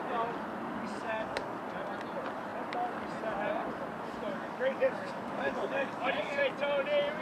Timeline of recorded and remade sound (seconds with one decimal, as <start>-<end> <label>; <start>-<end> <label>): 0.0-1.0 recorded; 1.0-1.6 remade; 1.6-4.3 recorded; 4.3-6.4 remade; 6.4-7.2 recorded